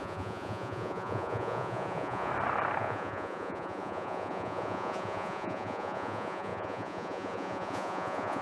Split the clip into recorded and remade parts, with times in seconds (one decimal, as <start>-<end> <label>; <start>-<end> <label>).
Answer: 0.0-2.3 remade; 2.3-2.8 recorded; 2.8-8.4 remade

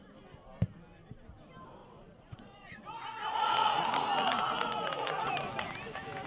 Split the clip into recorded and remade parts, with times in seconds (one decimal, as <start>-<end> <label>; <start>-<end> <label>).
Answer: 0.0-1.8 recorded; 1.8-5.3 remade; 5.3-6.3 recorded

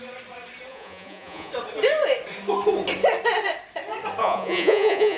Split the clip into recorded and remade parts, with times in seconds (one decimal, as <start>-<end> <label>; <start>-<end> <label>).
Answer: 0.0-0.7 recorded; 0.7-1.5 remade; 1.5-4.2 recorded; 4.2-5.2 remade

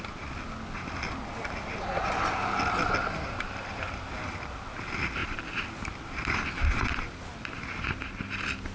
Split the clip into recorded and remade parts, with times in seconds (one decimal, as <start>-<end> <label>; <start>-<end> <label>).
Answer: 0.0-8.7 recorded